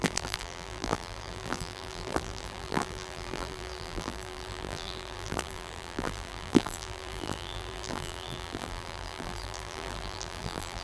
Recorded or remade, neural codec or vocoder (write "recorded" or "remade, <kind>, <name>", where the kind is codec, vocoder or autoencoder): remade, vocoder, BigVGAN v2